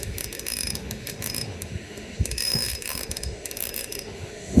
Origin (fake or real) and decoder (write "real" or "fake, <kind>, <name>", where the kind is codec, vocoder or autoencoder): fake, autoencoder, DAC-VAE